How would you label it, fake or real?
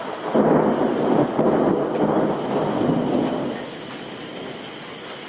real